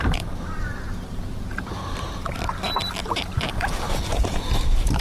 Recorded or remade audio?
remade